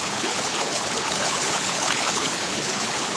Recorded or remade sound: remade